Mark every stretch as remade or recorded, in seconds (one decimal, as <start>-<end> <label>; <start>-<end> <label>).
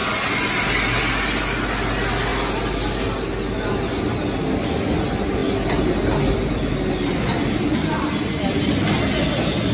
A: 0.0-9.7 recorded